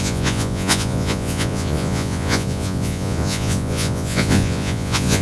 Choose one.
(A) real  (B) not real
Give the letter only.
B